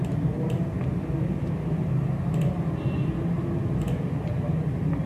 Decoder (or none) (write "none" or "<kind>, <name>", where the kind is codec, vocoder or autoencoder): none